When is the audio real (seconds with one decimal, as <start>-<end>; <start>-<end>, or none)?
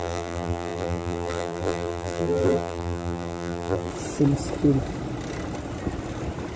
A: 3.9-6.6